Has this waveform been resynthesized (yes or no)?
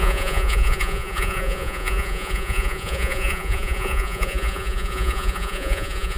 yes